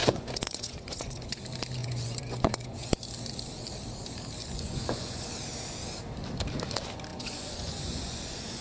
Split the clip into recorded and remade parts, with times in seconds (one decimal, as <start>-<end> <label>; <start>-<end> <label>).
0.0-1.4 remade; 1.4-1.8 recorded; 1.8-2.9 remade; 2.9-4.4 recorded; 4.4-5.3 remade; 5.3-7.1 recorded; 7.1-8.6 remade